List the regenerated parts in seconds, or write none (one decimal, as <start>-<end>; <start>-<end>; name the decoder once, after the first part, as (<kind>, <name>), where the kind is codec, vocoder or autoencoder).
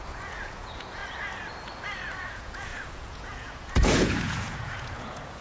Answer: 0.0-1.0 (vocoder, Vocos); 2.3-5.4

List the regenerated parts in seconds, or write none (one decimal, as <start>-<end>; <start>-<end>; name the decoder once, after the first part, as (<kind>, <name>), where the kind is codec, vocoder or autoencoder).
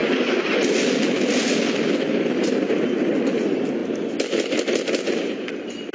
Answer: none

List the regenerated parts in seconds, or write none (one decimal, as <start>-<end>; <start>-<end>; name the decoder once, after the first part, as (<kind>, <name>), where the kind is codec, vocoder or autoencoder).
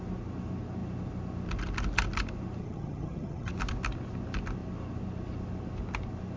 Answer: 2.6-3.5 (vocoder, HiFi-GAN)